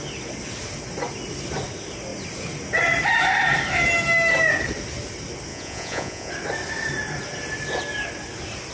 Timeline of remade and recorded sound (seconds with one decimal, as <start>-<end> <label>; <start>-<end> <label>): 0.0-5.5 recorded; 5.5-6.3 remade; 6.3-8.7 recorded